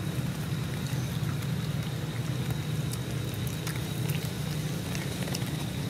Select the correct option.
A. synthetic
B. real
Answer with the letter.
B